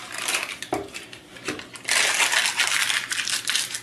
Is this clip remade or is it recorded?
recorded